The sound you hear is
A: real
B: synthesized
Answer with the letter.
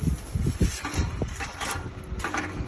B